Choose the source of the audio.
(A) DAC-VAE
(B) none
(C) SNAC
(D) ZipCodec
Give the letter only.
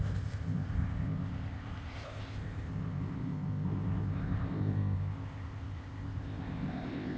D